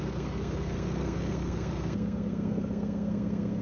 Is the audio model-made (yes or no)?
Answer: yes